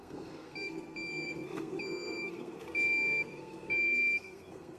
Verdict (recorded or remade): remade